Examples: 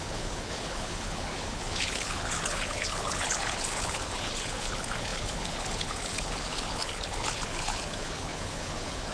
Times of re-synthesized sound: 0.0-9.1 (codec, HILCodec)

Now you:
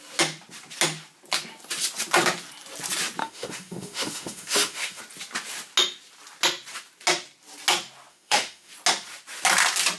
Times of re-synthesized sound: 3.2-5.0 (autoencoder, DAC-VAE); 8.1-8.7

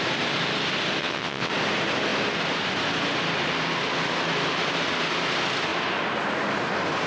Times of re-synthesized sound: 1.0-1.5 (vocoder, WaveNeXt)

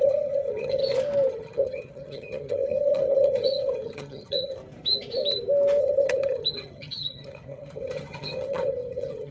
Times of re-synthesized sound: 0.0-0.8 (vocoder, HiFi-GAN); 1.3-4.6; 5.8-9.3